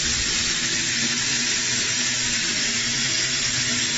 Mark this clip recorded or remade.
recorded